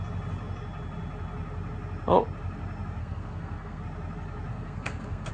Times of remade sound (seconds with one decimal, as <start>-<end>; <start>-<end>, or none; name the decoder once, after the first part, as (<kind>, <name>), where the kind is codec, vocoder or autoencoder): 3.0-3.8 (codec, SNAC); 4.5-5.3